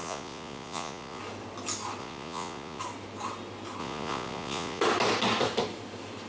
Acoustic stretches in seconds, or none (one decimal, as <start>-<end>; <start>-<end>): 1.2-2.0; 2.8-3.8; 4.8-6.3